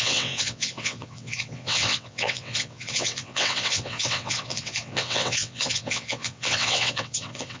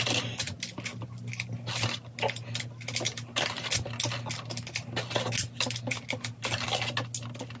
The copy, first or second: first